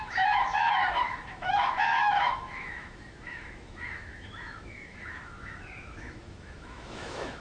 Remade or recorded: remade